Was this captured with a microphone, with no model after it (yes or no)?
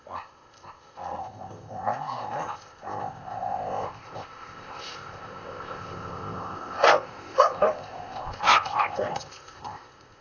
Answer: no